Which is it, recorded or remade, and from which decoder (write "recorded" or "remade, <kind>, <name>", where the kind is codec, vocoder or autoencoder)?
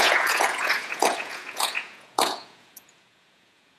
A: remade, vocoder, Vocos